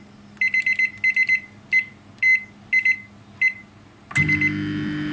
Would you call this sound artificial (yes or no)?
no